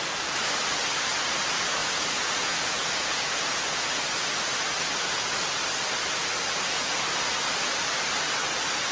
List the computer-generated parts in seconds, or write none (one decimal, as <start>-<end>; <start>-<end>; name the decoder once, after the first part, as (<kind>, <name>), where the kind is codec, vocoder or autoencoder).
1.8-4.0 (vocoder, Vocos)